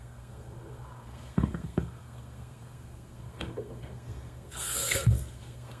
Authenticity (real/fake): fake